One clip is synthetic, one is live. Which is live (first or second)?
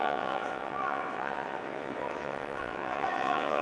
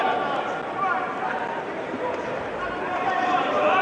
second